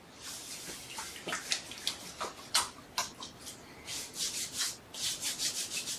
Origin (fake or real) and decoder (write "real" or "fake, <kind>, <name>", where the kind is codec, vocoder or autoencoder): real